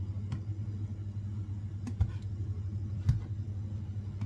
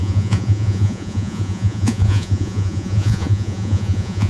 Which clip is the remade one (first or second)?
second